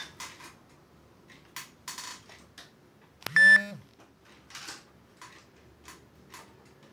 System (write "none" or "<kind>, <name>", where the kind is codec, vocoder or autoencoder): none